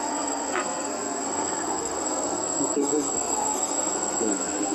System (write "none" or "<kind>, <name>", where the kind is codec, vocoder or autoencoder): codec, SNAC